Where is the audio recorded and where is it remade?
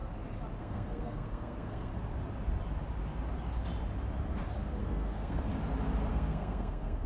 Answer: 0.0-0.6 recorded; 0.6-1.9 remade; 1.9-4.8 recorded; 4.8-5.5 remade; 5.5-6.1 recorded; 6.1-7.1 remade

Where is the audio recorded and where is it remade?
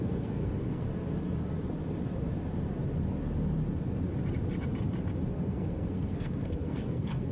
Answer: 0.0-0.9 remade; 0.9-5.3 recorded; 5.3-7.3 remade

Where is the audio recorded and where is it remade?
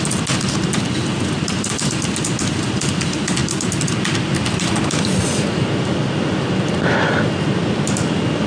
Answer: 0.0-8.5 recorded